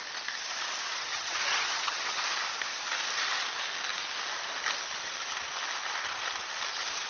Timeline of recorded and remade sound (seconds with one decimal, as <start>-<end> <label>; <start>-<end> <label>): 0.0-1.1 recorded; 1.1-2.2 remade; 2.2-7.1 recorded